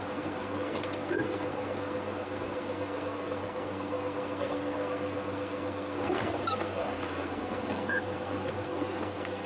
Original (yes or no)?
no